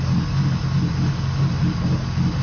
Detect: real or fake real